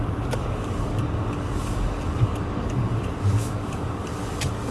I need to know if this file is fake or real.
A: fake